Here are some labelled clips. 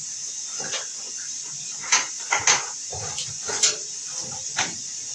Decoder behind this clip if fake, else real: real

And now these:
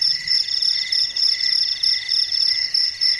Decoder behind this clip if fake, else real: real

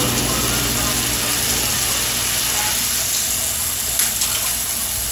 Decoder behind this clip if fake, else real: real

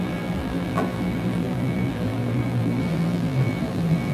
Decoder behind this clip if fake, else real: fake, vocoder, BigVGAN v2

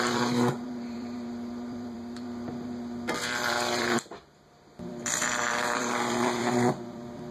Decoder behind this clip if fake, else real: fake, vocoder, BigVGAN v2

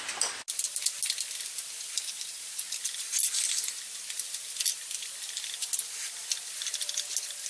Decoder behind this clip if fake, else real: real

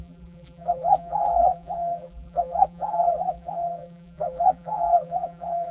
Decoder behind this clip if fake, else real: fake, vocoder, BigVGAN v2